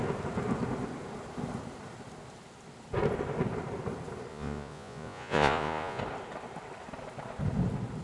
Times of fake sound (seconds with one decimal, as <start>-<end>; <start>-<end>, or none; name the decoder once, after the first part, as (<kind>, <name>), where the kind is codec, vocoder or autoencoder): 4.3-6.0 (vocoder, Vocos)